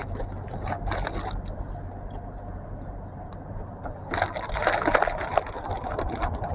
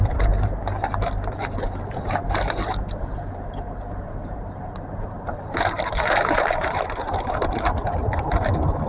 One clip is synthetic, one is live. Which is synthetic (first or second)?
second